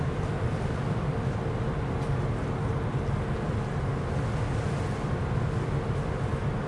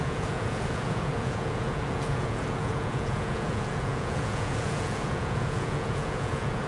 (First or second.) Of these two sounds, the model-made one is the second